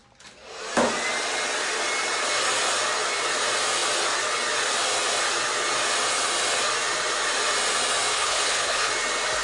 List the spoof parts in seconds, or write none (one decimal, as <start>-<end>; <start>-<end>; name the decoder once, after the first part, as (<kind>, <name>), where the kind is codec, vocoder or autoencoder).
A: 8.1-8.9 (codec, HILCodec)

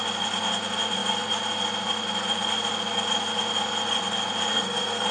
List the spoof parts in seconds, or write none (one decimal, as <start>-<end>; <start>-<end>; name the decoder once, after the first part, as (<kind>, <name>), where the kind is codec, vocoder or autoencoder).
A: 4.5-5.1 (codec, SNAC)

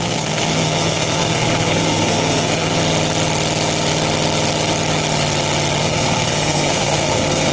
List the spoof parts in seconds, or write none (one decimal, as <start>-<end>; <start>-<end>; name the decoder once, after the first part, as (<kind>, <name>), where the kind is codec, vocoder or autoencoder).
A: 0.0-2.8 (codec, SNAC); 5.8-7.5

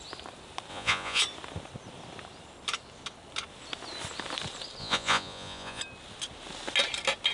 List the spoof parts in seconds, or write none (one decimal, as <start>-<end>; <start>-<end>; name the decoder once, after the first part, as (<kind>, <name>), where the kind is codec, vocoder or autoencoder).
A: 0.7-1.2 (vocoder, Vocos); 4.8-5.8

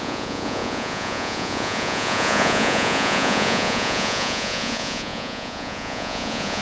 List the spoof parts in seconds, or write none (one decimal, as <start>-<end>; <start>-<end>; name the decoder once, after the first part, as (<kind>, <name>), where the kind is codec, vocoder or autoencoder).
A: 0.0-6.6 (vocoder, Vocos)